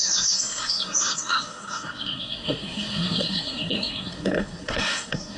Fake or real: fake